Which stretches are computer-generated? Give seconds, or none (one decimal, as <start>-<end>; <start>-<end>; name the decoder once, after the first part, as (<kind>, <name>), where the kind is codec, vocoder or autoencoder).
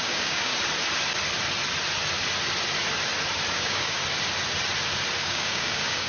0.0-0.5 (codec, DAC); 3.5-4.0; 5.2-6.1